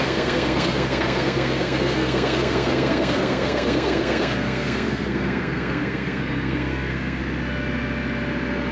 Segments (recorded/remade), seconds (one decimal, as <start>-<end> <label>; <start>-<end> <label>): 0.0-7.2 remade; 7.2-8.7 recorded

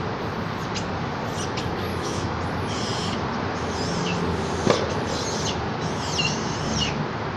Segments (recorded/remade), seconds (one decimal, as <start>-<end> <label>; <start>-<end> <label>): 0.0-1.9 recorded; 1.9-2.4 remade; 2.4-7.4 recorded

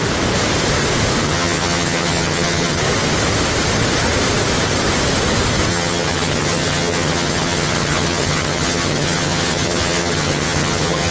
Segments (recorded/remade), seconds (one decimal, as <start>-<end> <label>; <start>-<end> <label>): 0.0-1.2 recorded; 1.2-2.8 remade; 2.8-5.7 recorded; 5.7-11.1 remade